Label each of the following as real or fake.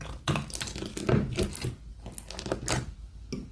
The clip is real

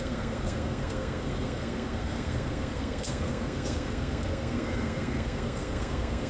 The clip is fake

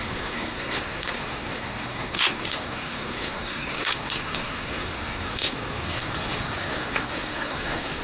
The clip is fake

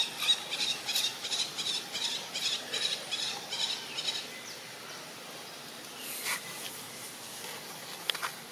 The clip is real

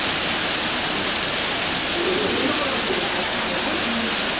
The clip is real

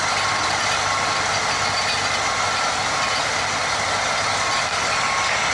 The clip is real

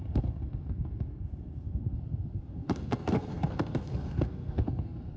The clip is fake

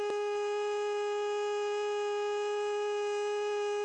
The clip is real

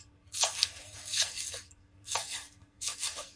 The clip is fake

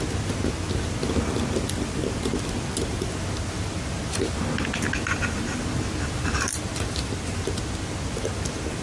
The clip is real